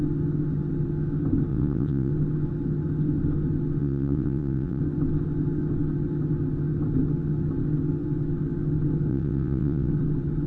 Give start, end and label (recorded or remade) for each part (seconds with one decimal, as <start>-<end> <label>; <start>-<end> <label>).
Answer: 0.0-1.5 recorded; 1.5-2.1 remade; 2.1-3.8 recorded; 3.8-4.8 remade; 4.8-9.1 recorded; 9.1-9.9 remade; 9.9-10.5 recorded